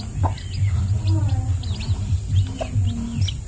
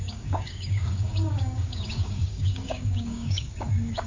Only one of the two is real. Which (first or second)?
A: first